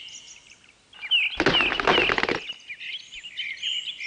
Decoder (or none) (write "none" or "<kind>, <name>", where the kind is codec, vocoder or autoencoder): none